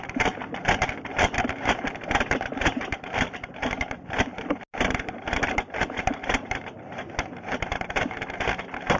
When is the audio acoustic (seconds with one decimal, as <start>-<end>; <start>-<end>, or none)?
0.0-9.0